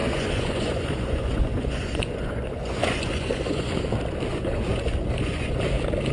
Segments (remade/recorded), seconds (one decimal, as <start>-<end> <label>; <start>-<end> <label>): 0.0-3.7 remade; 3.7-4.3 recorded; 4.3-5.6 remade; 5.6-6.1 recorded